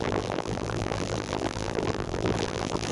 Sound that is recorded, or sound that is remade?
remade